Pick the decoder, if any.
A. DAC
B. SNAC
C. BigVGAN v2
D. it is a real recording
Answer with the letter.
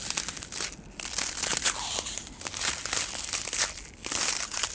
D